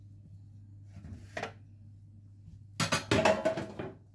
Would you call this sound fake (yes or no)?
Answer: no